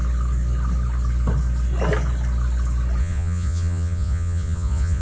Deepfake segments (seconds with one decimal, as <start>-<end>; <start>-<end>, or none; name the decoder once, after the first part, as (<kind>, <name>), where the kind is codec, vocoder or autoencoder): 3.0-5.0 (vocoder, Vocos)